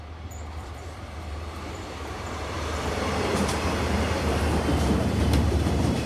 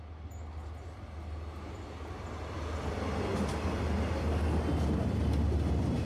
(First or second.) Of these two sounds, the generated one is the first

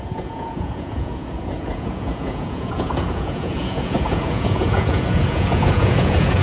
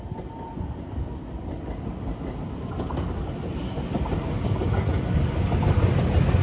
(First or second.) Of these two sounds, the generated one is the first